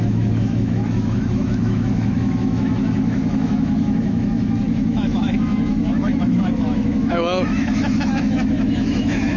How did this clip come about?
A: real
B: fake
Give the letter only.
B